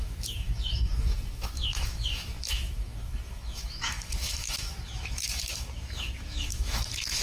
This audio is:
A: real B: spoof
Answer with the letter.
B